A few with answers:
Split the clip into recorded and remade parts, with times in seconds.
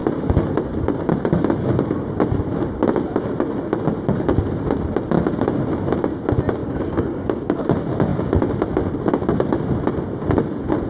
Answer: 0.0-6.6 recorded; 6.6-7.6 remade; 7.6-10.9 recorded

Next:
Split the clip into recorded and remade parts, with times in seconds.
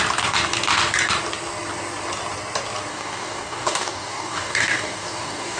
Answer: 0.0-2.9 recorded; 2.9-5.6 remade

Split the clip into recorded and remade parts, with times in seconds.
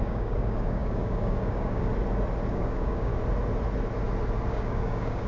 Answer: 0.0-1.9 remade; 1.9-2.5 recorded; 2.5-3.1 remade; 3.1-4.5 recorded; 4.5-5.3 remade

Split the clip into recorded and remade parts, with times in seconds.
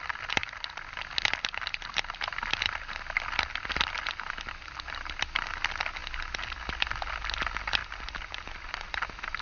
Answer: 0.0-9.4 recorded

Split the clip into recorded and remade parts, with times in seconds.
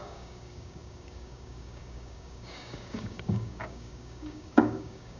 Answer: 0.0-5.2 remade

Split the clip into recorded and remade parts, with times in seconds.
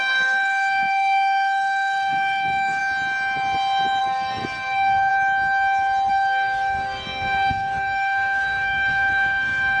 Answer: 0.0-2.8 remade; 2.8-4.0 recorded; 4.0-5.1 remade; 5.1-6.1 recorded; 6.1-9.8 remade